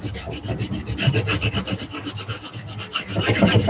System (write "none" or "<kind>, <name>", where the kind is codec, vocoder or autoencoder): none